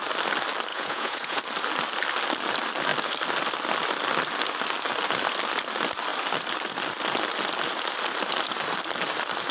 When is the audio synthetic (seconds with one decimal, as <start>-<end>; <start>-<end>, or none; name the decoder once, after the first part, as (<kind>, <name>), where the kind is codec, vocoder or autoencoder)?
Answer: 0.7-1.4 (vocoder, Vocos)